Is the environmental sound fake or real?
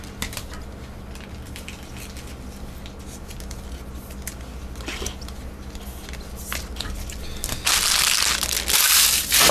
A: real